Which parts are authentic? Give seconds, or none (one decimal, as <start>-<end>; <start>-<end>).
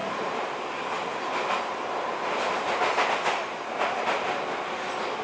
0.0-5.2